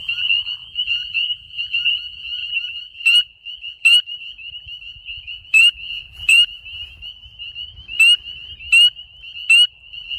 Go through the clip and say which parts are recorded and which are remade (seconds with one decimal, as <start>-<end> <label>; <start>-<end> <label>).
0.0-6.6 remade; 6.6-9.7 recorded; 9.7-10.2 remade